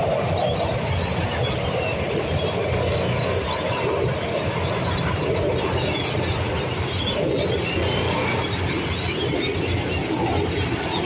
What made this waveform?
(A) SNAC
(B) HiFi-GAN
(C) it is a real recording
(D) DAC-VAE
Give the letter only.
C